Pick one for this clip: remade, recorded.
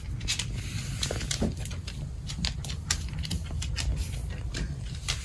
recorded